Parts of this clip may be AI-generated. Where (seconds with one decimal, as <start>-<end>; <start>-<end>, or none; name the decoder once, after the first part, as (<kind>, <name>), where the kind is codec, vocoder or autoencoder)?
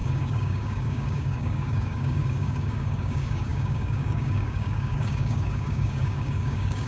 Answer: 0.0-6.9 (codec, DAC)